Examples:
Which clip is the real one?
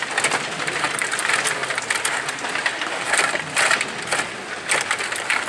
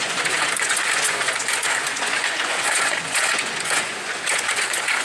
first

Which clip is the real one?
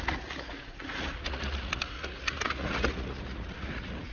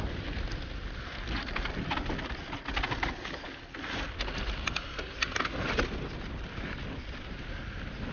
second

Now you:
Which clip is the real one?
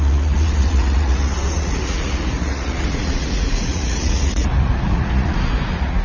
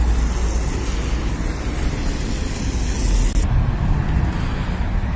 second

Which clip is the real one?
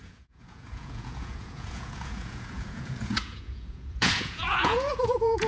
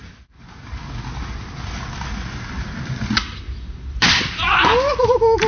second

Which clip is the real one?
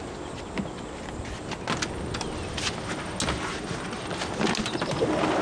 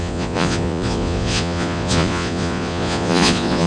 first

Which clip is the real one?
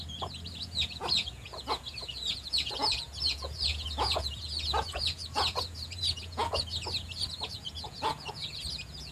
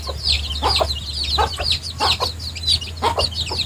second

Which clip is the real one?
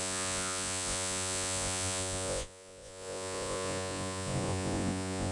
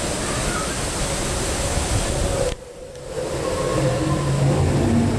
second